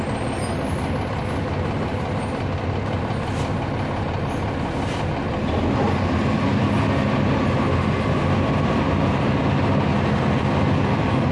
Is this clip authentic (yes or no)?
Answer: yes